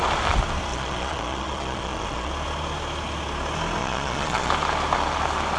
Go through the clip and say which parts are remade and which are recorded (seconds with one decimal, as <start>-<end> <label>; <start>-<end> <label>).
0.0-0.7 recorded; 0.7-2.3 remade; 2.3-3.8 recorded; 3.8-4.5 remade; 4.5-5.6 recorded